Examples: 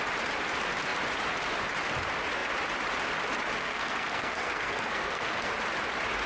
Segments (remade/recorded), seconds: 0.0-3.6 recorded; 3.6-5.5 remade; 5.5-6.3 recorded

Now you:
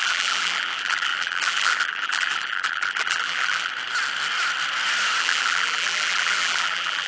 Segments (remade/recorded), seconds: 0.0-3.7 remade; 3.7-5.2 recorded; 5.2-7.1 remade

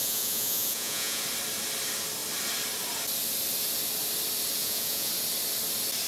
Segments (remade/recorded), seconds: 0.0-1.2 remade; 1.2-4.6 recorded; 4.6-5.1 remade; 5.1-6.1 recorded

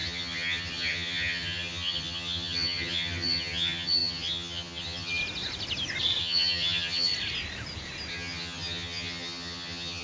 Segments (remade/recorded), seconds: 0.0-5.2 remade; 5.2-6.2 recorded; 6.2-7.1 remade; 7.1-8.1 recorded; 8.1-10.0 remade